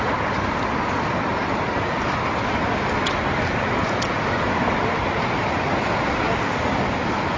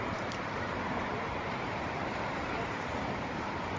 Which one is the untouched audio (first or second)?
first